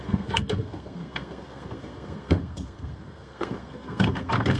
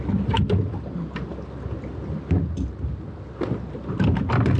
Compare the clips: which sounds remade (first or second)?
first